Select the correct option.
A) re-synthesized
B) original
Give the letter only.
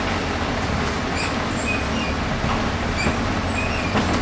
B